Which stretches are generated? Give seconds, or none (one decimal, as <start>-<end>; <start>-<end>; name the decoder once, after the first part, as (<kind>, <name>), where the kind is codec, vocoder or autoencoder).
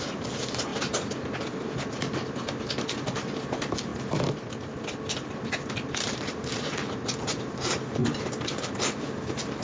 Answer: 0.0-0.7 (vocoder, BigVGAN v2); 3.5-3.9; 6.0-9.6